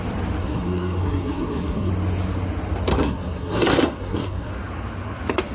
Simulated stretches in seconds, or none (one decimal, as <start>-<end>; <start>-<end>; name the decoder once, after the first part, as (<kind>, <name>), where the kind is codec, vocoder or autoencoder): 0.4-1.9 (codec, SNAC); 2.9-4.5